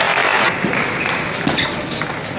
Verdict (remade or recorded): recorded